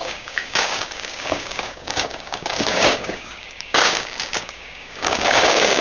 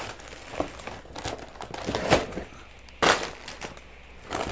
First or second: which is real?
second